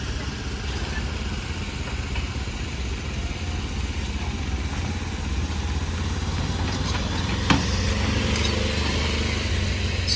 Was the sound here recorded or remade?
recorded